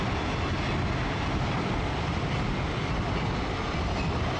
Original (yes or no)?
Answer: yes